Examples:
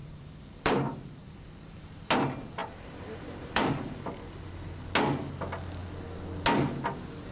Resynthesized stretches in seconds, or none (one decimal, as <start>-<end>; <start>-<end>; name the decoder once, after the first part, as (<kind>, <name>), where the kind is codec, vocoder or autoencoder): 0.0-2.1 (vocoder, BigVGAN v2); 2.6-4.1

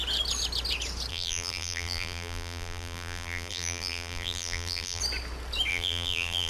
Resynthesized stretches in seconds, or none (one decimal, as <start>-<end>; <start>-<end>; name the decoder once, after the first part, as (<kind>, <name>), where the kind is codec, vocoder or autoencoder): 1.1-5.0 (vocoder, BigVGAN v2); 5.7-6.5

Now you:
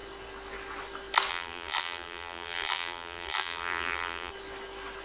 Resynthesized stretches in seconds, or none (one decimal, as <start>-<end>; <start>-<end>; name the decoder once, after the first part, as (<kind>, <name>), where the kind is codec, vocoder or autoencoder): 1.3-4.3 (vocoder, BigVGAN v2)

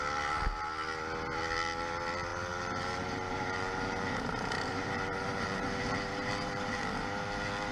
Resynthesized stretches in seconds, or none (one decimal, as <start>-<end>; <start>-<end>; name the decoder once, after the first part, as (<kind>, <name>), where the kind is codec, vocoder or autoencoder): 2.3-6.8 (vocoder, BigVGAN v2)

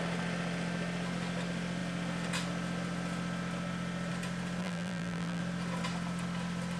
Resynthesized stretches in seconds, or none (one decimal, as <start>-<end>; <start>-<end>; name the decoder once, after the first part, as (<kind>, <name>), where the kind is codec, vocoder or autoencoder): 4.6-5.4 (vocoder, BigVGAN v2)

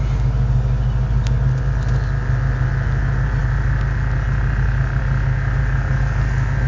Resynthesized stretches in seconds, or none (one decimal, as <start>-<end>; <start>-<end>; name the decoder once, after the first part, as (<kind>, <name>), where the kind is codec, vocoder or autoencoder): none